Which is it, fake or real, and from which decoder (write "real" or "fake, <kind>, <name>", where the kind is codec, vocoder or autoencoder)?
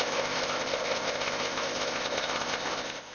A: fake, codec, ZipCodec